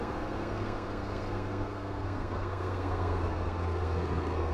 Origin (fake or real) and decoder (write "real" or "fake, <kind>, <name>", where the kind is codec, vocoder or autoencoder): fake, codec, SNAC